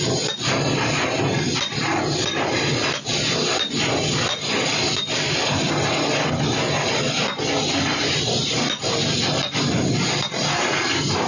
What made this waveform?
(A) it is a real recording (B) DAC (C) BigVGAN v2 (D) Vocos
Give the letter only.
A